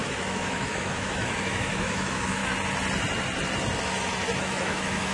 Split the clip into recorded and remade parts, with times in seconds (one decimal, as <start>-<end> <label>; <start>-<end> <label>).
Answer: 0.0-2.4 remade; 2.4-4.4 recorded; 4.4-5.1 remade